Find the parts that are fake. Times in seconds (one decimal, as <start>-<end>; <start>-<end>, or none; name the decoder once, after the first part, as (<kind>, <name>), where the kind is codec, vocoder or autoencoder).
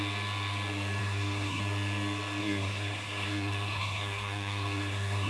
1.0-1.6 (codec, SNAC); 2.4-5.3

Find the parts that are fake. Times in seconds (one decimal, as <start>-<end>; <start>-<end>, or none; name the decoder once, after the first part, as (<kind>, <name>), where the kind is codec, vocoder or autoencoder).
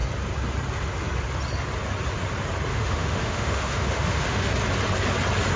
2.7-4.5 (autoencoder, DAC-VAE)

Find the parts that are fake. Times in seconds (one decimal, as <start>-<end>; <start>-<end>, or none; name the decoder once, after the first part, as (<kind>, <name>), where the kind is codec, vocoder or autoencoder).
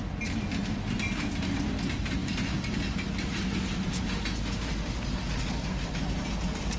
none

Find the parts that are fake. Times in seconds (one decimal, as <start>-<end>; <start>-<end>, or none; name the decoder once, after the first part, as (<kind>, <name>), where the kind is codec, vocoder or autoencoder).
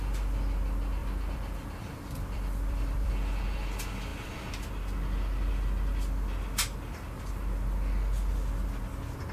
1.0-3.1 (vocoder, BigVGAN v2)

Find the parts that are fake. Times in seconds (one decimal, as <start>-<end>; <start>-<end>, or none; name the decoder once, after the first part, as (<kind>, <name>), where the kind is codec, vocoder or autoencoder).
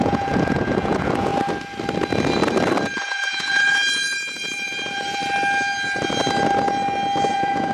0.0-1.3 (vocoder, Vocos); 3.0-5.2; 7.3-7.7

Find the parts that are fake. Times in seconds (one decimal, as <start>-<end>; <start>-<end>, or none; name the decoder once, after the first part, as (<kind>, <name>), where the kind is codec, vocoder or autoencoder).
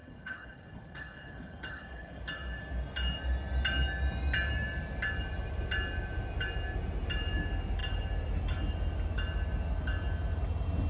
0.0-2.2 (codec, HILCodec)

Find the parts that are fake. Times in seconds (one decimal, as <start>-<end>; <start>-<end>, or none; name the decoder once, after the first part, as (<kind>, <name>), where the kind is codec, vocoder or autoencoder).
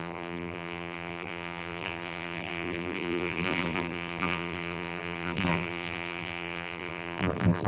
0.0-7.7 (vocoder, BigVGAN v2)